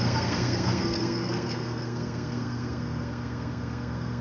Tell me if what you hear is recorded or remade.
remade